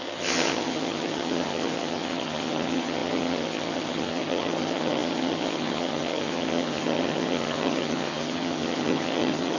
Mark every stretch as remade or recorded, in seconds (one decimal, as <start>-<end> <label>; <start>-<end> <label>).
0.0-9.6 remade